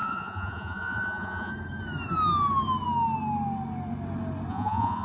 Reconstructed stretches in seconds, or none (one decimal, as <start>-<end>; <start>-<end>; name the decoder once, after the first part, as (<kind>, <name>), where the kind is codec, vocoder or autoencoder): 0.0-1.5 (vocoder, Vocos); 4.5-5.0